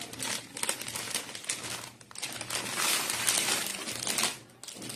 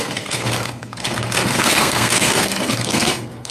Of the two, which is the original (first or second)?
first